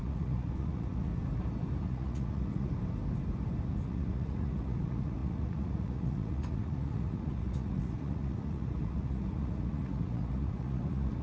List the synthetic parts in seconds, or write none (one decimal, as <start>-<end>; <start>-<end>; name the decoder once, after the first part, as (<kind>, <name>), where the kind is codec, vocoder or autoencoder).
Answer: 0.0-1.1 (vocoder, Vocos); 1.8-2.7; 3.7-11.2